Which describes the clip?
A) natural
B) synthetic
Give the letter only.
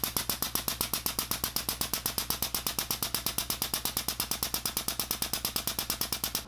A